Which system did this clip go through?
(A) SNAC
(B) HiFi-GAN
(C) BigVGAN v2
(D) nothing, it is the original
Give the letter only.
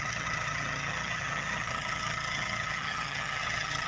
B